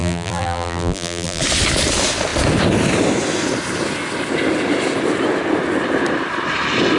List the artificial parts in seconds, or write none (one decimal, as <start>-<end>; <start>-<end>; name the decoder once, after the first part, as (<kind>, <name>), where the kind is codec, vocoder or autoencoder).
0.0-1.4 (vocoder, BigVGAN v2)